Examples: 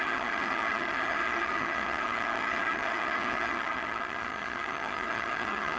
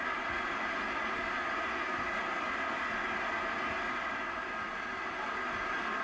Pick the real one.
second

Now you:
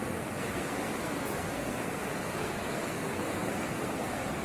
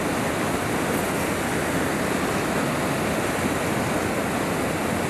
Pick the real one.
second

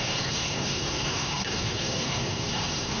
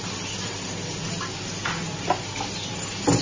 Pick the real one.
second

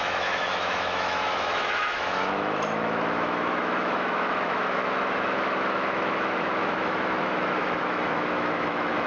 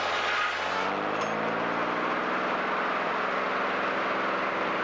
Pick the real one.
second